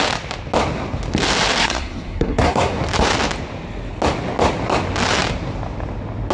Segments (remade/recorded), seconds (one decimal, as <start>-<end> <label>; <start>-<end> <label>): 0.0-1.6 recorded; 1.6-2.8 remade; 2.8-6.3 recorded